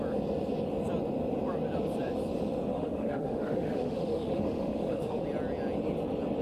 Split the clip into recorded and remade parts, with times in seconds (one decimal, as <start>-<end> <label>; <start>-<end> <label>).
0.0-2.7 recorded; 2.7-5.2 remade; 5.2-6.4 recorded